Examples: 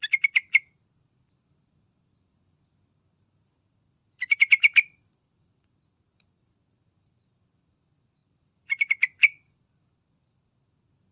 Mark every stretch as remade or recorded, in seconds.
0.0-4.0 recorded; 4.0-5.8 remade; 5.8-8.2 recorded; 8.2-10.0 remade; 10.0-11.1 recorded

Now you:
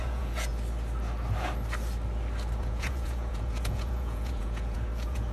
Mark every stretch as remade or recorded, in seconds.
0.0-0.5 remade; 0.5-2.6 recorded; 2.6-5.3 remade

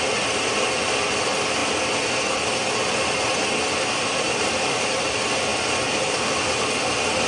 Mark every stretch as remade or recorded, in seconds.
0.0-7.3 recorded

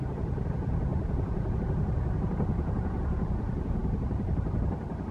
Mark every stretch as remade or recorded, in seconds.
0.0-3.8 remade; 3.8-5.1 recorded